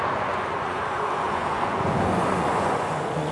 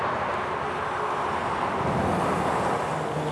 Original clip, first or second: second